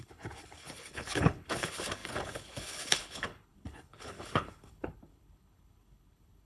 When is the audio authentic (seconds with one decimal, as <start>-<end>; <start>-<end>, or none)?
none